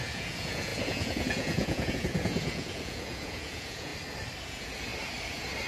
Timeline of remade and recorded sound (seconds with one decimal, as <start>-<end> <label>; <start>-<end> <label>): 0.0-3.9 remade; 3.9-4.5 recorded; 4.5-4.9 remade; 4.9-5.7 recorded